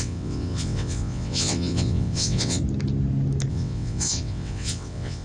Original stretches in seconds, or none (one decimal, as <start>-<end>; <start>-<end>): 2.6-3.5